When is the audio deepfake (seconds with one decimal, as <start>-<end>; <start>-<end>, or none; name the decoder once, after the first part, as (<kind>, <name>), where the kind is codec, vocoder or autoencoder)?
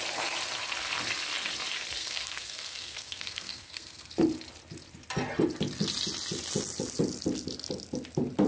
2.0-4.1 (codec, SNAC)